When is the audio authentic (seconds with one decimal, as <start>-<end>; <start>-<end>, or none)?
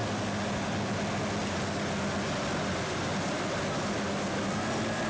0.0-5.1